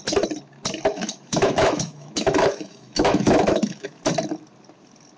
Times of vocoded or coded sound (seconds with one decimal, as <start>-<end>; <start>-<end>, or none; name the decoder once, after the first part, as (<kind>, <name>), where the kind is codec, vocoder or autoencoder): 0.9-4.0 (autoencoder, DAC-VAE)